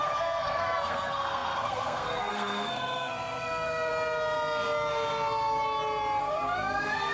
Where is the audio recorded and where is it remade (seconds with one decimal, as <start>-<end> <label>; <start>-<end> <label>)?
0.0-3.9 remade; 3.9-6.2 recorded; 6.2-7.1 remade